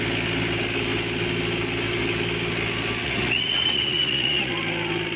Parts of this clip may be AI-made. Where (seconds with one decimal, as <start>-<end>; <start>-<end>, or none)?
3.0-4.5